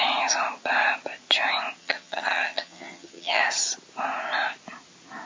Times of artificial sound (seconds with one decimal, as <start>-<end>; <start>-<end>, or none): 1.8-3.4